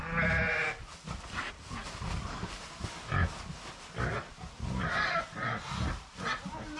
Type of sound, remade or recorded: recorded